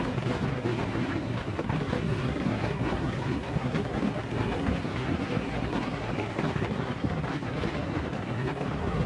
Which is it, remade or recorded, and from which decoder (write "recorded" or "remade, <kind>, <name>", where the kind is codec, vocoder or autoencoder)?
remade, codec, SNAC